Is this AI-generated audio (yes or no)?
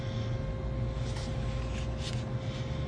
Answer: no